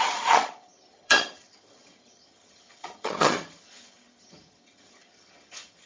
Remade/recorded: remade